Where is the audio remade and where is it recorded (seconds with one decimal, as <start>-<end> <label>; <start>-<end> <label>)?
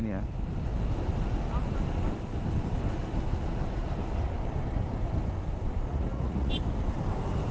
0.0-5.9 recorded; 5.9-6.5 remade; 6.5-7.5 recorded